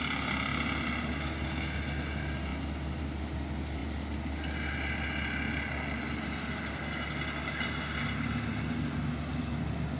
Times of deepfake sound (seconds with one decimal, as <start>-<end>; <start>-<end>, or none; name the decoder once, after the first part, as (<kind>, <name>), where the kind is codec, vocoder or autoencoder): none